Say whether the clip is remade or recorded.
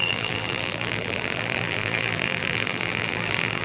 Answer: remade